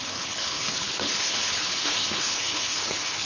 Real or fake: fake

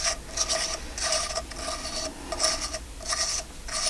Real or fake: real